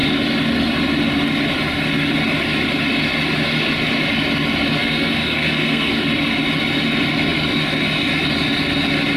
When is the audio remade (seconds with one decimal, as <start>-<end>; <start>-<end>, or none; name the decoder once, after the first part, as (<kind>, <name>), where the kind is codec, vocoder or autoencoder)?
4.8-6.0 (codec, SNAC)